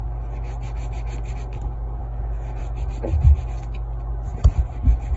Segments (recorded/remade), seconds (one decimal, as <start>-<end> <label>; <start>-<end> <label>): 0.0-2.0 recorded; 2.0-2.6 remade; 2.6-5.2 recorded